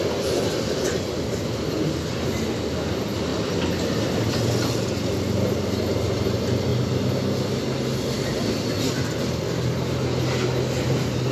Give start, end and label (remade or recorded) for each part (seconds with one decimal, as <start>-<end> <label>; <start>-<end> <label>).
0.0-11.3 recorded